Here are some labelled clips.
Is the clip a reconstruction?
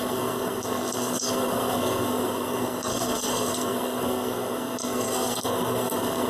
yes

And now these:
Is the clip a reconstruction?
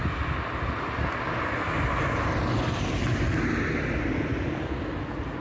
no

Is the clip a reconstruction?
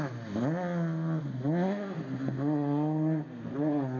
no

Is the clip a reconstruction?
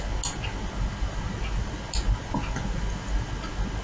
no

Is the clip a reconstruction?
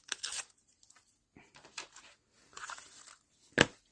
no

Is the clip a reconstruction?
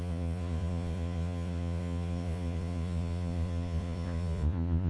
yes